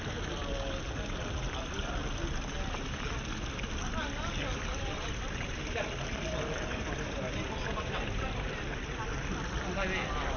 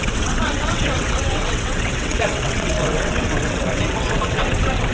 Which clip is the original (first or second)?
first